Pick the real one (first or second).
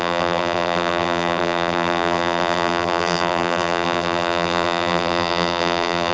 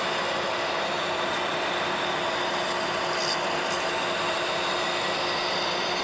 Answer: second